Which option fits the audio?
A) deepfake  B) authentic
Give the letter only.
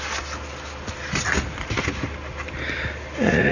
B